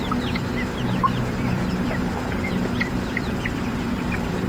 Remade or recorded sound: remade